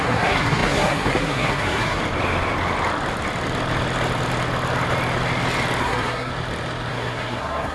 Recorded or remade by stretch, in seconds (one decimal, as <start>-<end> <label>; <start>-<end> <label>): 0.0-2.0 remade; 2.0-5.8 recorded; 5.8-6.3 remade; 6.3-6.9 recorded; 6.9-7.7 remade